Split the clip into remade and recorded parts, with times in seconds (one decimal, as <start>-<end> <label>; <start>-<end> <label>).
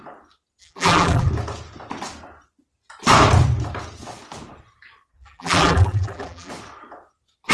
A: 0.0-0.6 recorded; 0.6-1.3 remade; 1.3-5.1 recorded; 5.1-6.5 remade; 6.5-7.5 recorded